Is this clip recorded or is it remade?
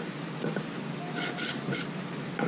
recorded